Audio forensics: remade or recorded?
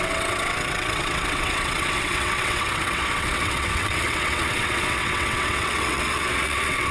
remade